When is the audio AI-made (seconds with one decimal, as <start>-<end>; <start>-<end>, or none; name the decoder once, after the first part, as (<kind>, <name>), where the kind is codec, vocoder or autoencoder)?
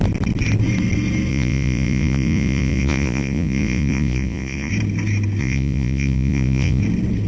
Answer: 1.3-4.7 (vocoder, Vocos); 5.4-6.8